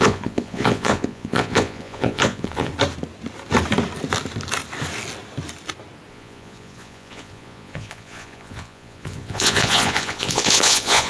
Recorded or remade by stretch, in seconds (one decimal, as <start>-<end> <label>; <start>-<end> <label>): 0.0-2.7 remade; 2.7-6.1 recorded; 6.1-11.1 remade